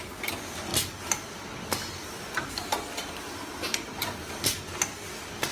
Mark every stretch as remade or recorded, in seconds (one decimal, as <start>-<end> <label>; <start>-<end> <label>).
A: 0.0-5.5 recorded